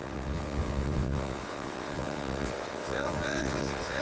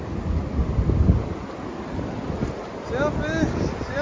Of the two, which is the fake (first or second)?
first